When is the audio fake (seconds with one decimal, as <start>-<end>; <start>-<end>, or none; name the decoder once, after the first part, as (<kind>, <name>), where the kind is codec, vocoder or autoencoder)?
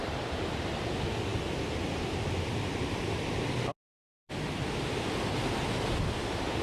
0.0-0.9 (vocoder, BigVGAN v2); 1.3-5.3